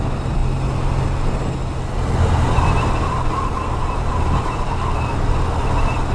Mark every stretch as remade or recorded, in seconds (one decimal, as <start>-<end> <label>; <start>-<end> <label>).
0.0-6.1 recorded